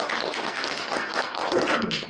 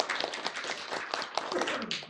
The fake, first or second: first